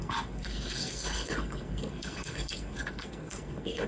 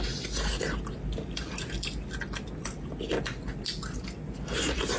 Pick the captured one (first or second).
second